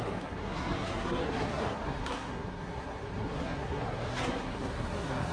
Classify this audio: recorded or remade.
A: remade